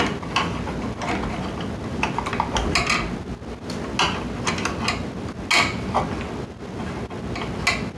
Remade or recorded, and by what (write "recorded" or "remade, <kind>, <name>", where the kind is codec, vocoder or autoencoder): recorded